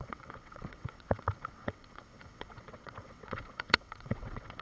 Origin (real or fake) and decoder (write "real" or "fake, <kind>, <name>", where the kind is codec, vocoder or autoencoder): fake, vocoder, WaveNeXt